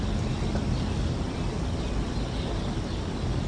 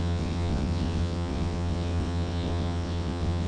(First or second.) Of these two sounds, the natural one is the first